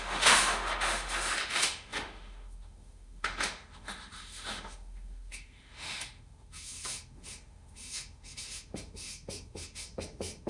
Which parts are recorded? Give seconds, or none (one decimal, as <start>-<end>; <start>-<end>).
none